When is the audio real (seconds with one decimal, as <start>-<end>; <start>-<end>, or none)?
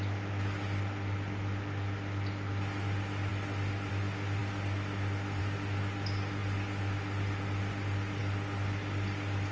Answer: 0.0-9.5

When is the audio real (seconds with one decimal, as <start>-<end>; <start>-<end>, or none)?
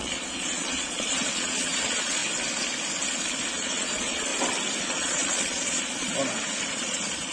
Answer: 2.2-3.5; 4.3-4.8; 6.1-6.7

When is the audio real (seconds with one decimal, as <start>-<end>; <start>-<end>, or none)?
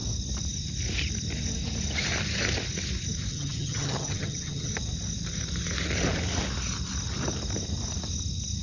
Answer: 0.0-3.3; 4.7-8.6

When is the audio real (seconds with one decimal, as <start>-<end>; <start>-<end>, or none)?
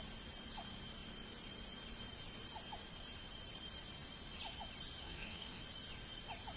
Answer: 0.0-5.0; 5.6-6.6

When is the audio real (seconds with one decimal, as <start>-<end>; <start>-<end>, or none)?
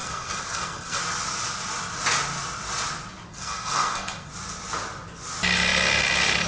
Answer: 1.0-3.3; 4.3-6.5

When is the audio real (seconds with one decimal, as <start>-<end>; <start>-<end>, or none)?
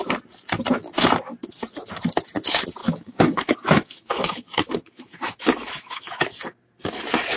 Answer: 0.0-2.8; 6.4-7.4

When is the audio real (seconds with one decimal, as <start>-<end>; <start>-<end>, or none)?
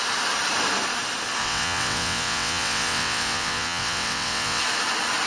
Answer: 0.0-1.4; 4.6-5.3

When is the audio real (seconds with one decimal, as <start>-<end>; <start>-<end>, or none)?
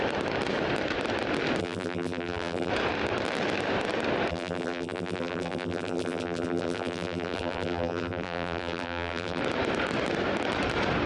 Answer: 0.0-1.6; 2.7-4.3; 9.4-11.1